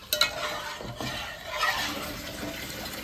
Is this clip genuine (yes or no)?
yes